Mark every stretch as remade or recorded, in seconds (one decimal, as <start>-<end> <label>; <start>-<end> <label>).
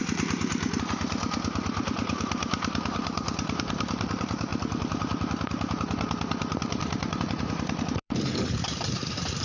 0.0-4.5 remade; 4.5-7.2 recorded; 7.2-9.4 remade